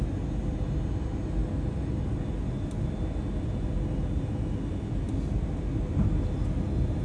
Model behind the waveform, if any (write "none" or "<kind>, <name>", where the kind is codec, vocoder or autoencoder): none